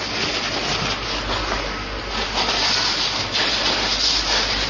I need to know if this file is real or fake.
real